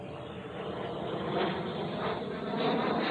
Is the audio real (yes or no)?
yes